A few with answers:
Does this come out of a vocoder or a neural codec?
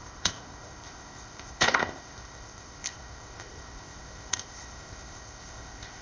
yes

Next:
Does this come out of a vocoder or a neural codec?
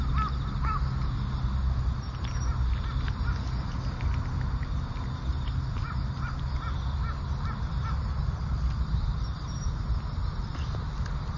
no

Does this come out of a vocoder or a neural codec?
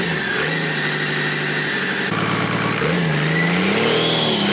no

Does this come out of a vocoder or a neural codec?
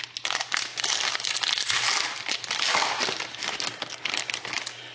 no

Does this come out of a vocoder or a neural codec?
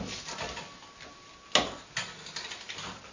no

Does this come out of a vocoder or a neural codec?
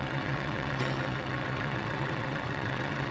yes